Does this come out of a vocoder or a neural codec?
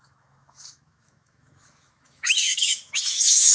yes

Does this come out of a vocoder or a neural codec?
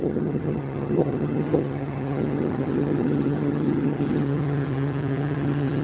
yes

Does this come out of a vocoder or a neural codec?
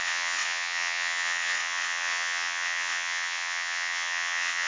yes